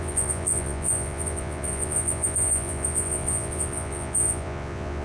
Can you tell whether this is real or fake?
fake